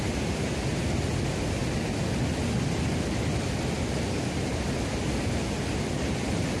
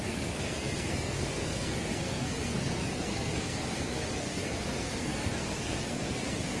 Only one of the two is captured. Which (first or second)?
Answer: first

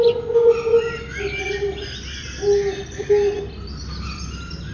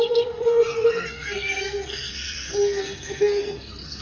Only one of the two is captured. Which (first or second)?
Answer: first